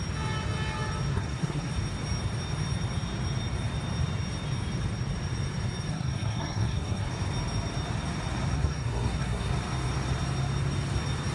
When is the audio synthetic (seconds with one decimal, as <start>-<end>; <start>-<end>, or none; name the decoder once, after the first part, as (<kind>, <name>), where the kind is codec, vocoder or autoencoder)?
1.1-1.7 (codec, SNAC); 5.9-7.1; 8.5-9.5